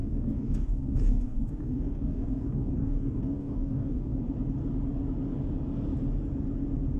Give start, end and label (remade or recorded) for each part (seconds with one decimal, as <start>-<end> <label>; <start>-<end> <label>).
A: 0.0-4.2 remade; 4.2-7.0 recorded